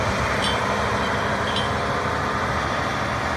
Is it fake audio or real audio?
fake